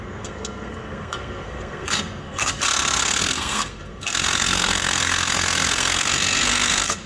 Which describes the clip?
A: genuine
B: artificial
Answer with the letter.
B